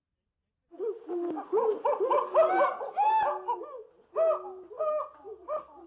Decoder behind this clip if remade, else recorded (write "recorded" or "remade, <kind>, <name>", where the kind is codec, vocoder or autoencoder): recorded